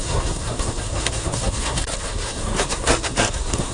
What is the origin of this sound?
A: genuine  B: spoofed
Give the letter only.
B